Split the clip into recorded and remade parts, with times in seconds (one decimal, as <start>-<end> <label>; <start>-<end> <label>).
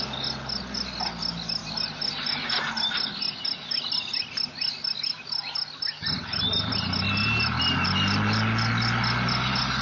0.0-9.8 recorded